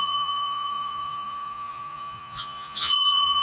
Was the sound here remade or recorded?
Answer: remade